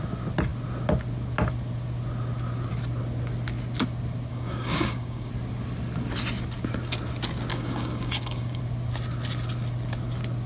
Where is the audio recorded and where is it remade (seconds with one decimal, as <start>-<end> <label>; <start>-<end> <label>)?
0.0-4.3 recorded; 4.3-5.3 remade; 5.3-7.5 recorded; 7.5-8.6 remade; 8.6-10.5 recorded